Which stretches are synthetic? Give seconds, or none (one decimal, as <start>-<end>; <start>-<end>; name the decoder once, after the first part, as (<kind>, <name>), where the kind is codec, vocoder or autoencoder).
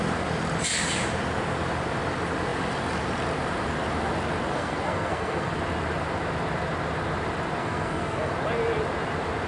4.5-5.5 (codec, SNAC); 7.6-8.3